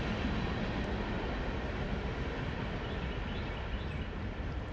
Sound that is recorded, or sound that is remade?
recorded